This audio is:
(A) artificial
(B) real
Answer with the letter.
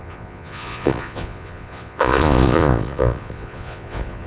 A